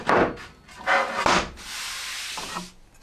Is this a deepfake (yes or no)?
no